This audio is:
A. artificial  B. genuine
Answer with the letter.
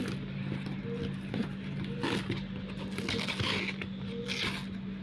B